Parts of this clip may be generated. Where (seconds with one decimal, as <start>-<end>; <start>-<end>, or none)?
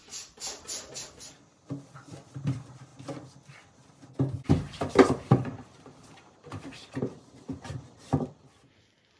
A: 0.0-9.2